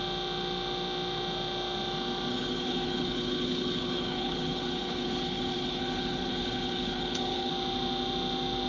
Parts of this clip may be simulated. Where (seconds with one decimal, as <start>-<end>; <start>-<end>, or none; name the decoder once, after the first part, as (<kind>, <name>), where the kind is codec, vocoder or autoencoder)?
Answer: 2.3-7.5 (codec, HILCodec)